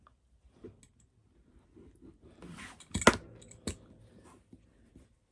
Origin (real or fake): real